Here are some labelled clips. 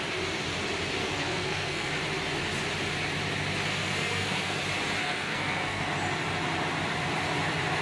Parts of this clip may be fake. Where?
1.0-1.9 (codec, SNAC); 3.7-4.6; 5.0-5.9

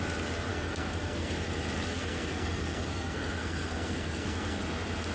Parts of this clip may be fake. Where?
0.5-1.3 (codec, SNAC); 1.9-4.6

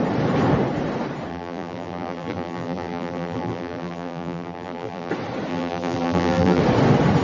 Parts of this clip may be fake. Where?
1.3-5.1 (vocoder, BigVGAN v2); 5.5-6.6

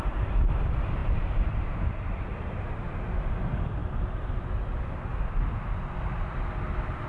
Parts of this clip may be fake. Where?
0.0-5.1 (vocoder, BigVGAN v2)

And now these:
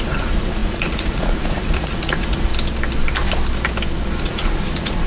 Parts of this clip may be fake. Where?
0.0-2.5 (vocoder, Vocos); 4.2-5.1